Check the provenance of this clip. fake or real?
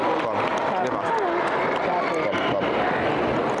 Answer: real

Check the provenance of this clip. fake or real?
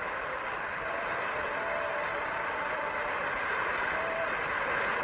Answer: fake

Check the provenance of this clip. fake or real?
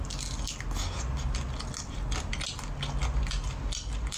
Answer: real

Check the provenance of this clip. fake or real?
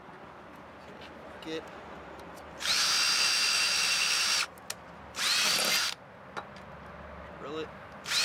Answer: real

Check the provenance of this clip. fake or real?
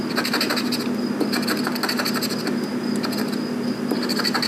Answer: real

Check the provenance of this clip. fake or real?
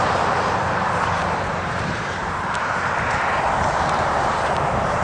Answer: fake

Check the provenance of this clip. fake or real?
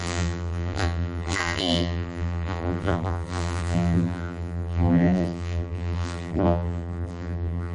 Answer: fake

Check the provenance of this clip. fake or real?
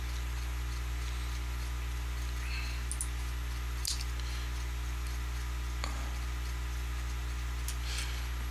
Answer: real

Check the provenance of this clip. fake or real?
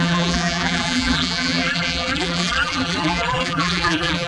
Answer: fake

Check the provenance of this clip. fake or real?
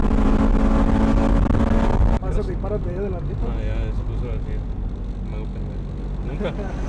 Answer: real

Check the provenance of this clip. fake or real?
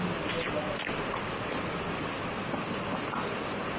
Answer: real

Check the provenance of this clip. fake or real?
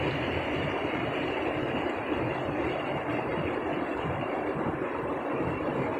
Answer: fake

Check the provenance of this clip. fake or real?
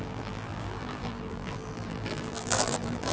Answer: fake